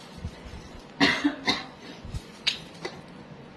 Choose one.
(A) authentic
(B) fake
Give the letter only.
B